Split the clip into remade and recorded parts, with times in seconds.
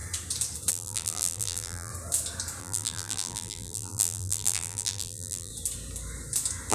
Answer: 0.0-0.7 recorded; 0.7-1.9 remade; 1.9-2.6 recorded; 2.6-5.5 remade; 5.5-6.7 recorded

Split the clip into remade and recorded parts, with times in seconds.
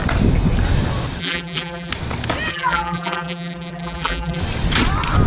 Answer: 0.0-1.2 recorded; 1.2-1.9 remade; 1.9-2.5 recorded; 2.5-4.4 remade; 4.4-5.3 recorded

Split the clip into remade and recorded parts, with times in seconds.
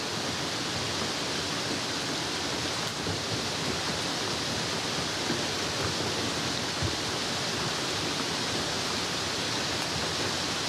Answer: 0.0-2.9 recorded; 2.9-4.1 remade; 4.1-10.7 recorded